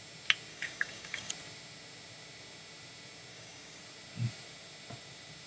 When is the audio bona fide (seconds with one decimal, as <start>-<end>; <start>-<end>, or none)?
0.0-0.5; 1.3-3.3; 3.8-5.5